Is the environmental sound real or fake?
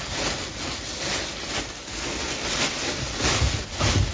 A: real